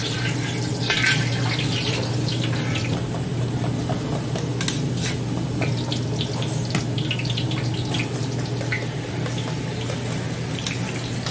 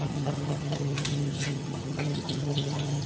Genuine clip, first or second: first